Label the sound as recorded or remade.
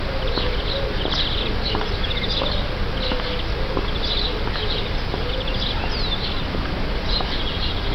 recorded